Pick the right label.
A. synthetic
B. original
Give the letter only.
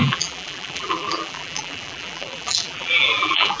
A